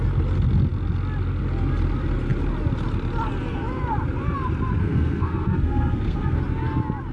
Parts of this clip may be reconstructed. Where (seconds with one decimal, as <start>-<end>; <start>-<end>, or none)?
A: 4.8-6.4